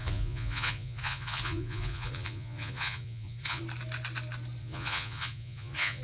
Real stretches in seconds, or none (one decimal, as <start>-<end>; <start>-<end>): 3.6-4.6